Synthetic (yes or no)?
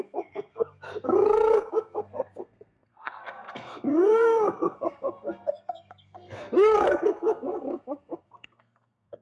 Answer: yes